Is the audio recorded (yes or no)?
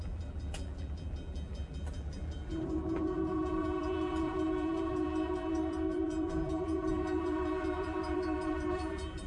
no